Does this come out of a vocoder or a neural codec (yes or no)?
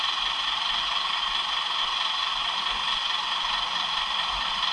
no